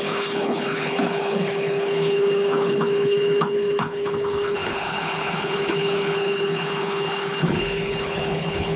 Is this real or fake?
fake